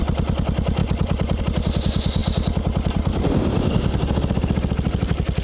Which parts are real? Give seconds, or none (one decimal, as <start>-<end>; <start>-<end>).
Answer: 0.0-0.8; 1.4-2.2; 3.7-5.4